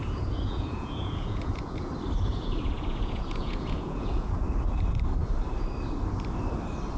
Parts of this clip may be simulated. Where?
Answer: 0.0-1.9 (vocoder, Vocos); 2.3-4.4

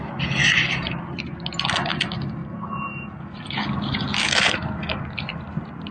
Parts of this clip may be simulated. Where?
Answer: none

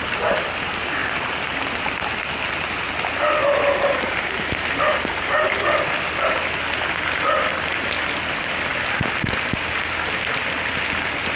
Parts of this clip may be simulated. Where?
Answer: 1.0-1.6 (vocoder, BigVGAN v2); 3.4-4.5

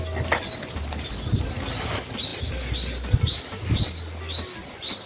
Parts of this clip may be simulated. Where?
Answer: none